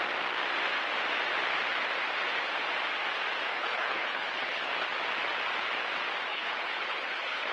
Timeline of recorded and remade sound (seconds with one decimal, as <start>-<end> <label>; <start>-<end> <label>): 0.0-3.5 recorded; 3.5-4.7 remade; 4.7-6.3 recorded; 6.3-7.5 remade